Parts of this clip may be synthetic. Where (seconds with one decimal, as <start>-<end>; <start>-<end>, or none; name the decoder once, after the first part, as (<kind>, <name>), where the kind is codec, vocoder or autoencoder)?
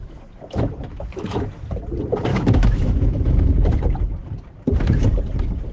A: 0.0-1.4 (autoencoder, DAC-VAE); 2.3-3.5